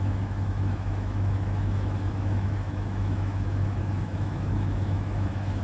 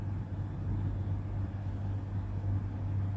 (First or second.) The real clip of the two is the second